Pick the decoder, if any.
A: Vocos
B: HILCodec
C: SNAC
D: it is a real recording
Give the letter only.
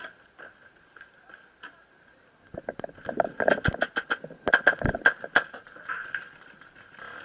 D